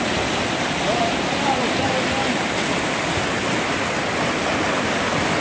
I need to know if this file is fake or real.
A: real